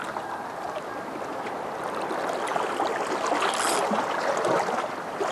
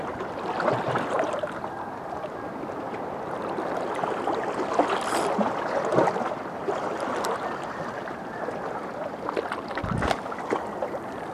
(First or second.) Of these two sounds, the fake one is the second